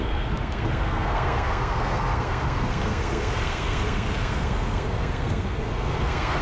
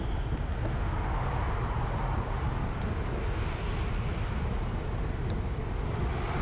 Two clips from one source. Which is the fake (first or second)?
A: first